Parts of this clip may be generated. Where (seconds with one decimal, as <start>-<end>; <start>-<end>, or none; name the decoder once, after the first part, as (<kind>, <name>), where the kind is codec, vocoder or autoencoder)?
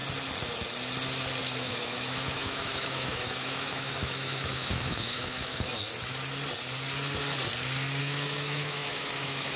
1.4-5.7 (autoencoder, DAC-VAE); 8.0-9.6